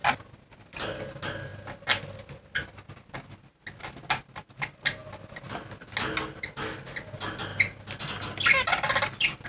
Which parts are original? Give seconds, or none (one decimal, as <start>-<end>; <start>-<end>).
0.0-9.5